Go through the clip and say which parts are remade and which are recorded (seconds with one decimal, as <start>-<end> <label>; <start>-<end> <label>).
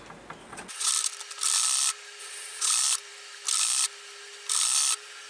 0.0-0.4 recorded; 0.4-0.9 remade; 0.9-2.2 recorded; 2.2-2.7 remade; 2.7-5.3 recorded